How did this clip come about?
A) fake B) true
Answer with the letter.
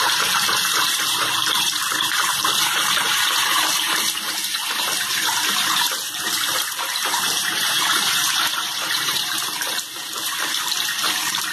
A